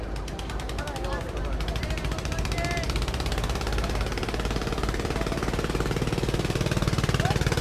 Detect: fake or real real